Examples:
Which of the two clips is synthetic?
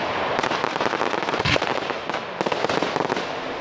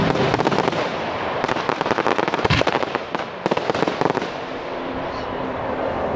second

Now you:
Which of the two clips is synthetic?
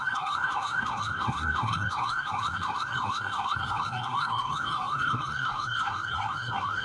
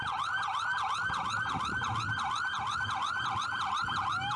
first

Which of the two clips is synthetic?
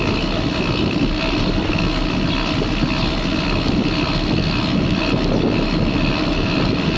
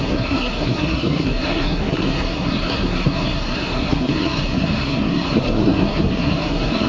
second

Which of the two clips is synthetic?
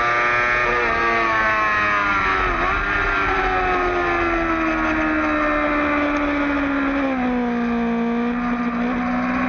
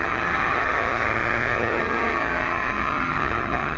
second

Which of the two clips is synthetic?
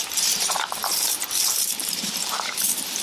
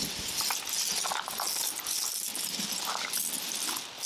first